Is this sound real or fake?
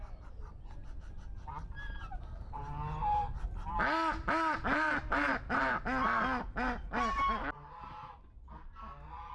real